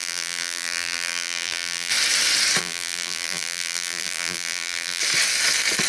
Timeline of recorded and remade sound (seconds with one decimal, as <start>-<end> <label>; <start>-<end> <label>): 0.0-1.9 remade; 1.9-2.6 recorded; 2.6-5.0 remade; 5.0-5.9 recorded